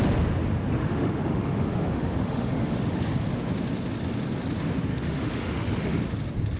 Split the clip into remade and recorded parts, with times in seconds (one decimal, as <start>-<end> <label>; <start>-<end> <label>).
0.0-0.8 recorded; 0.8-3.0 remade; 3.0-4.9 recorded; 4.9-6.0 remade; 6.0-6.6 recorded